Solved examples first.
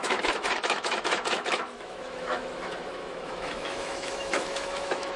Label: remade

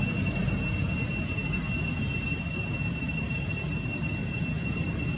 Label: recorded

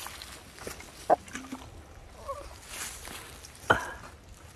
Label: recorded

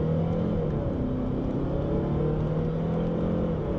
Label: recorded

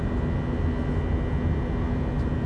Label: recorded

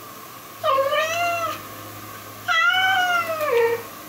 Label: recorded